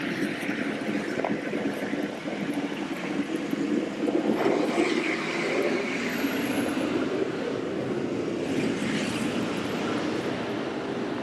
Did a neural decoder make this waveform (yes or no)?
no